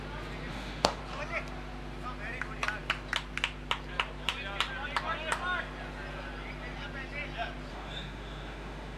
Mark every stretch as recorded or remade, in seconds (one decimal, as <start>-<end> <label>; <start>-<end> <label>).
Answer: 0.0-0.5 recorded; 0.5-1.0 remade; 1.0-7.7 recorded; 7.7-9.0 remade